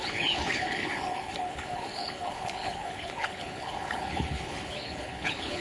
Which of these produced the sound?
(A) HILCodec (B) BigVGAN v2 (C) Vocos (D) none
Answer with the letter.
A